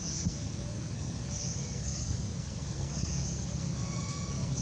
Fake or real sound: fake